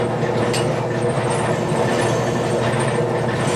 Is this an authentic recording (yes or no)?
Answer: yes